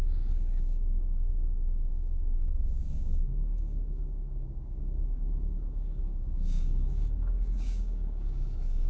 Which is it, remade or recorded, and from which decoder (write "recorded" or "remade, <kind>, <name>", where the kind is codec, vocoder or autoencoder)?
remade, codec, DAC